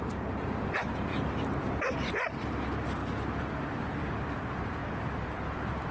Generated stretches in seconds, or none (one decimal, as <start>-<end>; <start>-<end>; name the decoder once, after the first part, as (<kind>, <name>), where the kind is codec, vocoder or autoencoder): 0.0-3.0 (vocoder, BigVGAN v2); 3.8-5.9